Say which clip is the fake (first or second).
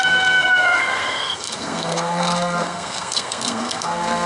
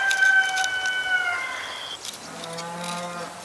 first